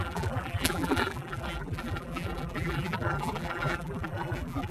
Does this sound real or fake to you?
fake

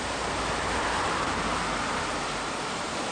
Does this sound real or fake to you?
fake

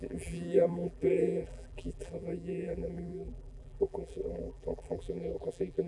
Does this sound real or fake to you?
fake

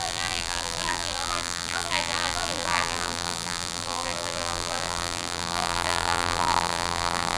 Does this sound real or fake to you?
fake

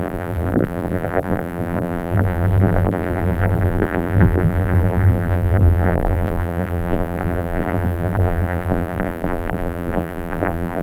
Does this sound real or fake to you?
fake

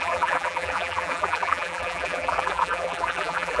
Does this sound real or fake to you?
fake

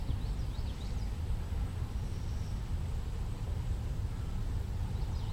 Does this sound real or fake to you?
real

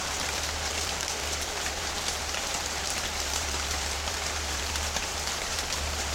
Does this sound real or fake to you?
fake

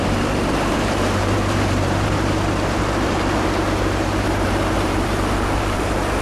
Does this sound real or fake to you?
fake